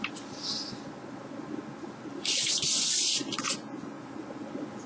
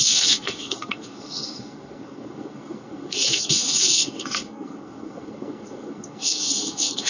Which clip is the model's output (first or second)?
second